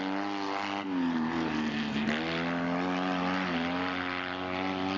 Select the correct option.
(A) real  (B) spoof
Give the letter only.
A